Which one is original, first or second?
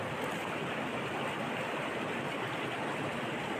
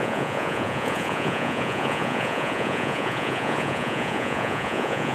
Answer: first